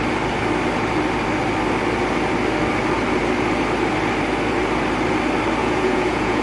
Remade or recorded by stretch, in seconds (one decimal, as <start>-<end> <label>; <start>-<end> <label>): 0.0-5.6 recorded; 5.6-6.4 remade